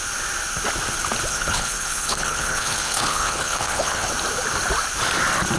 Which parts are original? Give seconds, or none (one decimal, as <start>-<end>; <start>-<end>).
0.0-1.3; 4.1-5.6